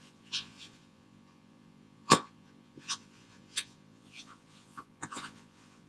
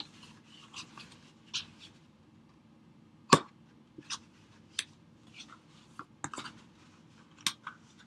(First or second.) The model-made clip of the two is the first